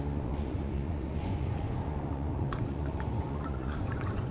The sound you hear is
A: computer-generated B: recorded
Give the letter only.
A